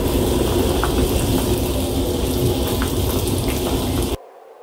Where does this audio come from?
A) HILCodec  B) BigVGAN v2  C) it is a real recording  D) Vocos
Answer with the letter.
C